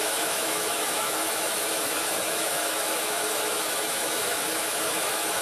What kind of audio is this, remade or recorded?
remade